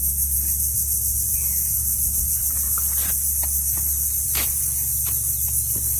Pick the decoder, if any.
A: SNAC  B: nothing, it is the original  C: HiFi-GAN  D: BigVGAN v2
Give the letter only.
B